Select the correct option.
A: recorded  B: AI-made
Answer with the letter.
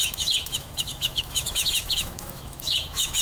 B